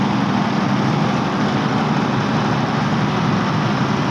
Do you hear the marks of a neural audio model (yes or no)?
no